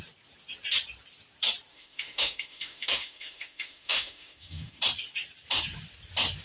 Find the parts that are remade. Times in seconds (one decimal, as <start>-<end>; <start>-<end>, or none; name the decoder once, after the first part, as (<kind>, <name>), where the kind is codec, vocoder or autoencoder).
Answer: 1.7-4.8 (autoencoder, DAC-VAE)